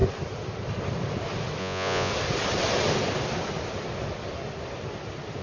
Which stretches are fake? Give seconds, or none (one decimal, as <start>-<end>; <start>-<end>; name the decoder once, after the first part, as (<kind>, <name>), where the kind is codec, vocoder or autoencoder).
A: 1.6-2.1 (vocoder, Vocos)